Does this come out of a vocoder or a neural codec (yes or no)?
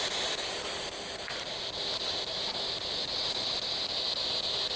no